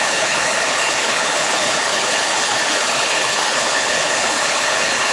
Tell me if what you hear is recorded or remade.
remade